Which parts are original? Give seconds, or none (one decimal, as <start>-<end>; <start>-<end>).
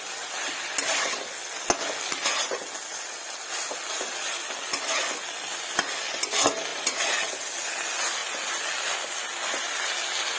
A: 0.0-6.7; 7.3-10.4